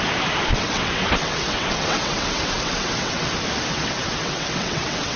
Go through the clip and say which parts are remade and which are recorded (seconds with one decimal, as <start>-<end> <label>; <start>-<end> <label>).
0.0-0.5 recorded; 0.5-3.3 remade; 3.3-3.7 recorded; 3.7-5.2 remade